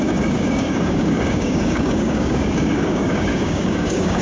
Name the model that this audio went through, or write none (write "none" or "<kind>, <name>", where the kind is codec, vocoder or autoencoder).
codec, DAC